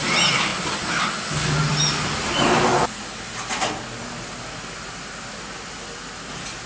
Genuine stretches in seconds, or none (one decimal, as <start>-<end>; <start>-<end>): 0.0-6.7